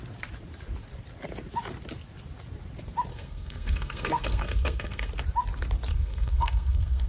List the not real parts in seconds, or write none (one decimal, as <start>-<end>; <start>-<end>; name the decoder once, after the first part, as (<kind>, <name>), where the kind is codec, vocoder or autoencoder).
3.1-5.1 (codec, SNAC); 5.9-7.1